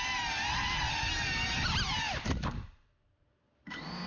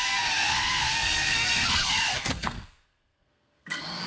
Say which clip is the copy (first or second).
second